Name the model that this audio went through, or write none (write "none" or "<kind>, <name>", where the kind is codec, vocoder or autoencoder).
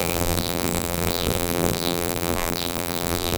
vocoder, BigVGAN v2